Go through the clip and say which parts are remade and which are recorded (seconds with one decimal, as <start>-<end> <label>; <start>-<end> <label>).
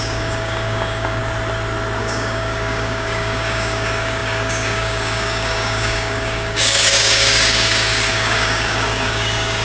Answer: 0.0-1.2 remade; 1.2-2.0 recorded; 2.0-9.6 remade